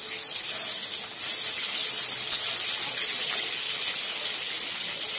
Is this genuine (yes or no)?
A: yes